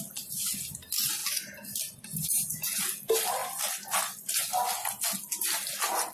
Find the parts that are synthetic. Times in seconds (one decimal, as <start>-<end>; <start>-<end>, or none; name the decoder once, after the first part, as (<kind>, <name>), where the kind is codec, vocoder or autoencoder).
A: none